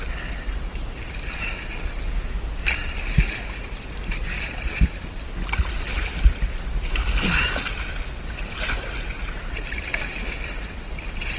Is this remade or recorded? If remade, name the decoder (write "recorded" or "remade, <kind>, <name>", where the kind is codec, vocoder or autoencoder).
recorded